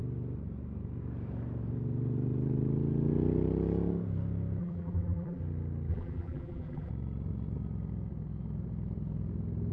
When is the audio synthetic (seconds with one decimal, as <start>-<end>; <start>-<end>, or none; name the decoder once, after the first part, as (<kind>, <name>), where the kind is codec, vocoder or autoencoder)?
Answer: 4.6-5.4 (vocoder, BigVGAN v2); 5.9-6.9